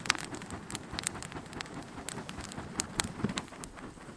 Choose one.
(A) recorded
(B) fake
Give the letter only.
A